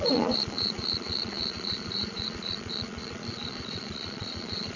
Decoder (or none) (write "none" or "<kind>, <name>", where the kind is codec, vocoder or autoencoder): vocoder, Vocos